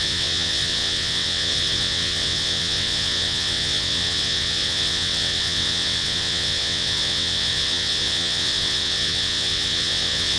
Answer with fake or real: fake